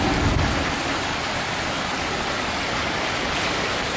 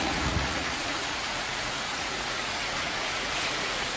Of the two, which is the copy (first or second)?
second